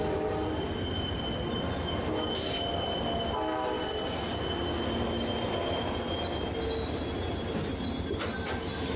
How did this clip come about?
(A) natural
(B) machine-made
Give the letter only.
A